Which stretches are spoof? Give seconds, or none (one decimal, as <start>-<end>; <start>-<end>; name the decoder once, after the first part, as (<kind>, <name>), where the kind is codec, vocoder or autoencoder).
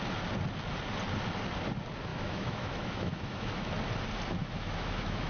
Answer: 2.1-3.7 (autoencoder, DAC-VAE); 4.4-5.3